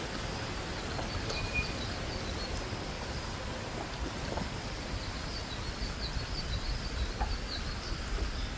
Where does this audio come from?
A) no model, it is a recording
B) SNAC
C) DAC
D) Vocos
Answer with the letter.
A